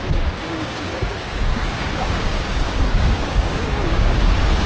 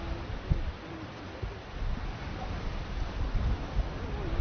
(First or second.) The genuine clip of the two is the second